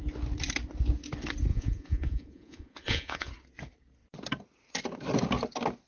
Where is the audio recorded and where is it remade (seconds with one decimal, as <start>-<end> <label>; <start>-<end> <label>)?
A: 0.0-1.5 recorded; 1.5-3.3 remade; 3.3-5.9 recorded